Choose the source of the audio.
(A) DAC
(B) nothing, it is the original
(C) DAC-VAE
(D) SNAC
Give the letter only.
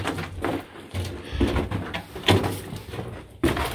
B